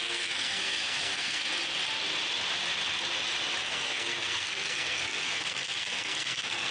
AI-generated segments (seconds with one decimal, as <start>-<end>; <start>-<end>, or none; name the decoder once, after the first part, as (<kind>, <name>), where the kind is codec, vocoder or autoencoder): 0.0-1.5 (codec, SNAC); 3.6-6.7